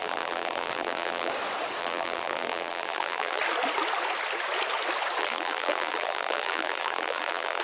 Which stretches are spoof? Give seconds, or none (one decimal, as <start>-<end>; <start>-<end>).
0.0-1.3; 1.8-3.4; 5.2-7.6